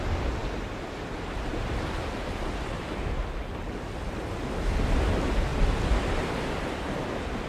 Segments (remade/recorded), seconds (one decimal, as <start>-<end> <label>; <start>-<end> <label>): 0.0-5.5 recorded; 5.5-6.8 remade; 6.8-7.5 recorded